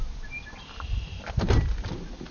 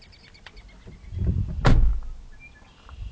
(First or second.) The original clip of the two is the second